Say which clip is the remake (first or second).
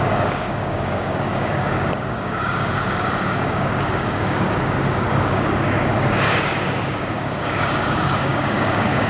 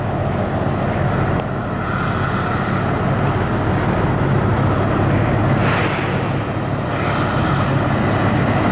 first